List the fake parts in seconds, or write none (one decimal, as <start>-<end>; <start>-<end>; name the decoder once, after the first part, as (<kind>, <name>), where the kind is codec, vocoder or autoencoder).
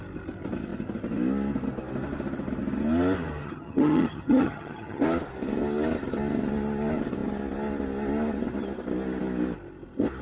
3.4-5.0 (vocoder, HiFi-GAN)